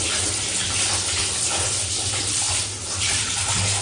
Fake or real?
real